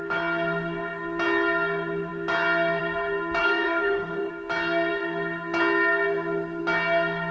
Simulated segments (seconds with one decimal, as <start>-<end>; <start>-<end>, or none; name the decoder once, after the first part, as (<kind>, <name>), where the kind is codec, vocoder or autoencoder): 3.4-4.3 (autoencoder, DAC-VAE)